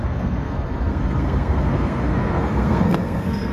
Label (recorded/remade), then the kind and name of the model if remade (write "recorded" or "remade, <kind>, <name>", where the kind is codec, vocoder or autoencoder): remade, codec, SNAC